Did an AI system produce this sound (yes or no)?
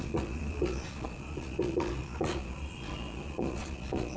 yes